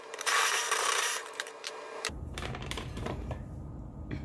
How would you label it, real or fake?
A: fake